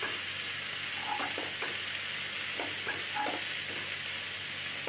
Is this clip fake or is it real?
real